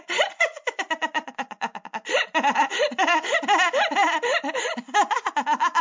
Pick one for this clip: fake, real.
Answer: fake